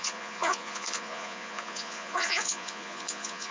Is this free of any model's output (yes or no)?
no